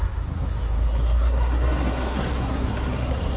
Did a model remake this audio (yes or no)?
yes